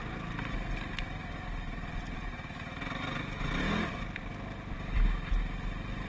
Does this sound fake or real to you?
real